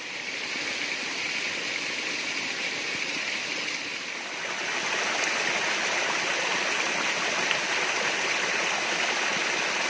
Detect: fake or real real